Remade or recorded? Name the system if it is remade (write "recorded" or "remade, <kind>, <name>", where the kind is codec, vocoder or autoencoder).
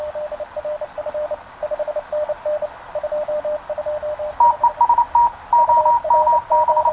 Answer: recorded